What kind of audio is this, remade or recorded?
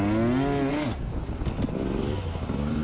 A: recorded